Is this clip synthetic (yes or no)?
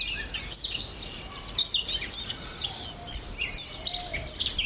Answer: no